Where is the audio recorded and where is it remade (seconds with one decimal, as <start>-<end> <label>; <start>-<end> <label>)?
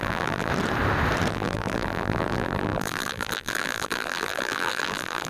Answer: 0.0-0.5 remade; 0.5-1.3 recorded; 1.3-5.3 remade